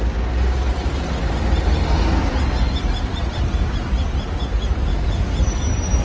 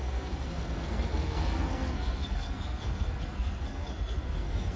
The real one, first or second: first